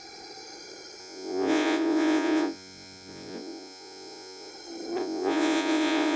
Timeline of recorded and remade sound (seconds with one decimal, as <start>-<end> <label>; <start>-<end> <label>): 0.0-1.0 recorded; 1.0-4.5 remade; 4.5-5.0 recorded; 5.0-6.2 remade